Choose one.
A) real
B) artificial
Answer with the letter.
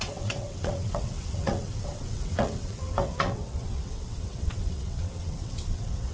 B